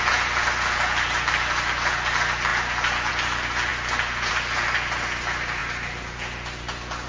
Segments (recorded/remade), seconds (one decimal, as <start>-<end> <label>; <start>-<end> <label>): 0.0-7.1 recorded